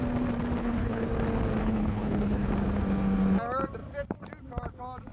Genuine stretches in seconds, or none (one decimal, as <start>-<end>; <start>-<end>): 0.0-0.6; 1.1-1.6; 2.5-5.1